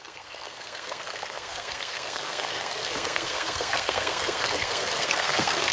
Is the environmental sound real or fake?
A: fake